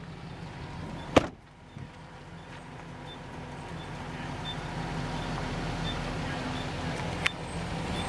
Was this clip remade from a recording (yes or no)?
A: no